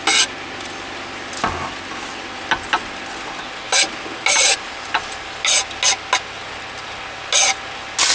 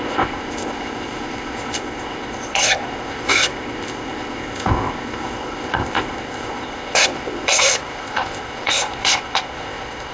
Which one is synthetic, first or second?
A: second